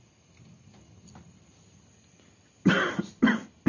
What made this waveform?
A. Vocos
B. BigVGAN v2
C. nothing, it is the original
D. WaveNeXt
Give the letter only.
C